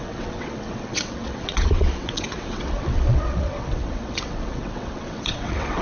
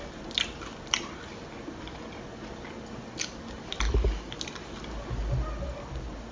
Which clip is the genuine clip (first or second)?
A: second